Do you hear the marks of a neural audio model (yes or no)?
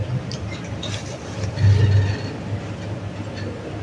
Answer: no